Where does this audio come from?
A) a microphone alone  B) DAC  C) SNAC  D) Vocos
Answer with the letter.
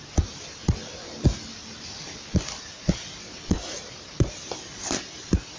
A